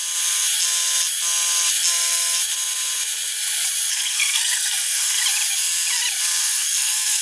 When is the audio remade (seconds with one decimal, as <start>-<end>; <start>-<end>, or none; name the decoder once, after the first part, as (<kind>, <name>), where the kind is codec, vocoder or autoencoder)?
3.9-5.2 (codec, SNAC); 6.4-7.2